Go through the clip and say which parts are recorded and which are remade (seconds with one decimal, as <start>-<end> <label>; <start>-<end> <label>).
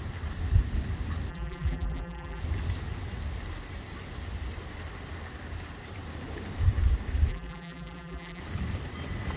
0.0-1.3 recorded; 1.3-2.4 remade; 2.4-7.3 recorded; 7.3-8.4 remade; 8.4-9.4 recorded